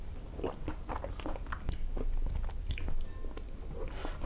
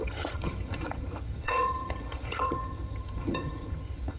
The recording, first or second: first